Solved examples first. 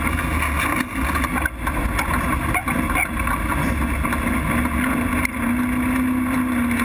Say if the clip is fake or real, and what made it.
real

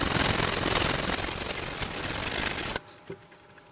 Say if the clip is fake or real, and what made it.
real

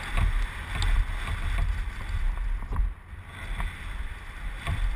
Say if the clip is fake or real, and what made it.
real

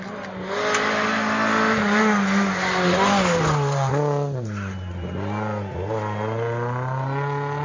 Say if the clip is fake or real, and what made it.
real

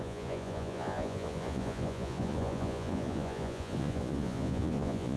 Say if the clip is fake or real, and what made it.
fake, vocoder, Vocos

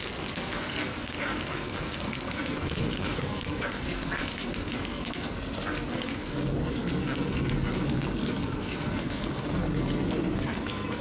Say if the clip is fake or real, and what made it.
fake, codec, SNAC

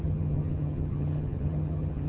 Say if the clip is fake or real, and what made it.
fake, vocoder, HiFi-GAN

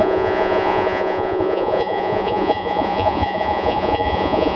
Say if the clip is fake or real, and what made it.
fake, vocoder, Vocos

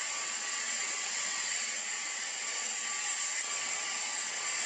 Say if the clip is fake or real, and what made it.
fake, vocoder, WaveNeXt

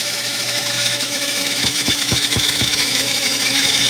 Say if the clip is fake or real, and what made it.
fake, autoencoder, DAC-VAE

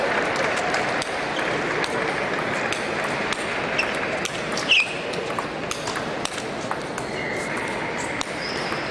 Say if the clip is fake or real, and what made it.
real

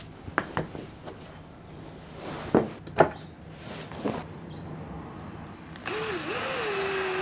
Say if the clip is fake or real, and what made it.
real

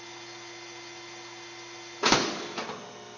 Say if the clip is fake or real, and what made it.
real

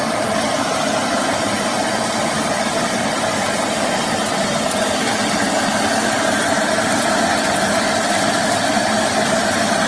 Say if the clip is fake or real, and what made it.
real